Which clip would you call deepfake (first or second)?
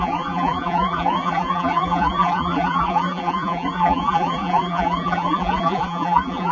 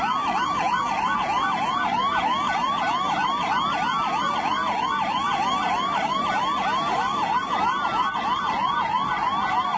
first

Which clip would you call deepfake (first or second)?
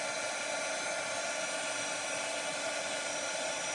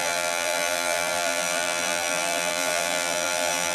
second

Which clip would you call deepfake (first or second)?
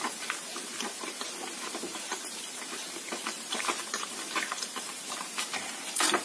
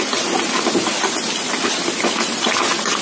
first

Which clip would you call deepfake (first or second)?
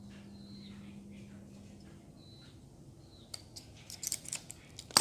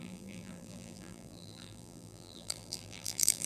second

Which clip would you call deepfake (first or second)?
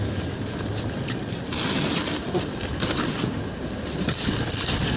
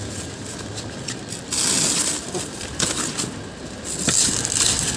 first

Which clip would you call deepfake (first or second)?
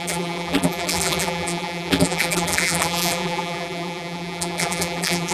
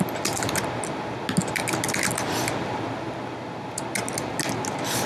first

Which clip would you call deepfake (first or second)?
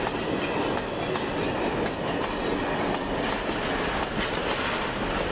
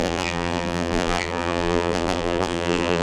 second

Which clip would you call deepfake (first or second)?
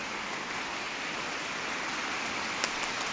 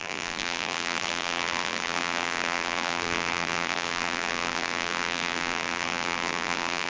second